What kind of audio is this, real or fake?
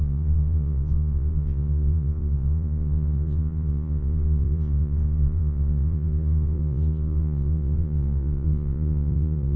fake